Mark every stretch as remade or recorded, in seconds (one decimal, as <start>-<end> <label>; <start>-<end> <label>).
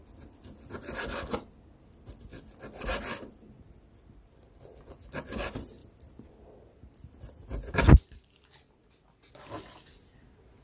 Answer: 0.0-10.6 recorded